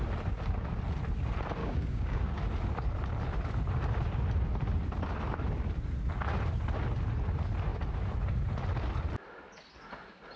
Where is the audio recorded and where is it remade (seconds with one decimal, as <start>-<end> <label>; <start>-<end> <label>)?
0.0-1.6 recorded; 1.6-2.2 remade; 2.2-10.4 recorded